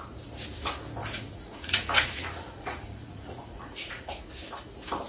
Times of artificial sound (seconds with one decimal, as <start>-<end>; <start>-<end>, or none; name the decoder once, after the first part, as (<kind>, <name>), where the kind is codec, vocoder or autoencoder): 1.0-4.1 (vocoder, Vocos)